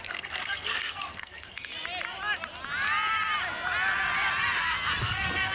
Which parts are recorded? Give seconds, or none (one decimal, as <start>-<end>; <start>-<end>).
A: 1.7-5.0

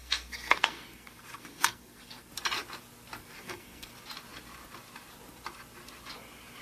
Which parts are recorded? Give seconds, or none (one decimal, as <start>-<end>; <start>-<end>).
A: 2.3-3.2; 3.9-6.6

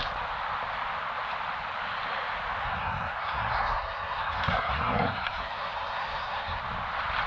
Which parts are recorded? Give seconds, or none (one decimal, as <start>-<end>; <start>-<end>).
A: 0.0-2.6; 6.6-7.3